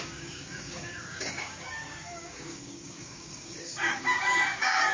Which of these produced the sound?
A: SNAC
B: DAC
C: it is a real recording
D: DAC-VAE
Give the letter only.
B